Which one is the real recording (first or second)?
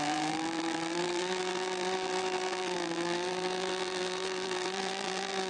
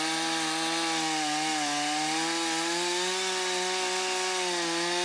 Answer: second